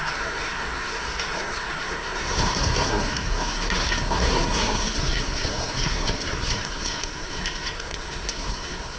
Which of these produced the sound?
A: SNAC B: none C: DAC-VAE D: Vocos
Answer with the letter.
A